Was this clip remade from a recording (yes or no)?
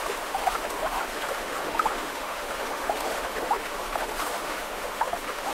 yes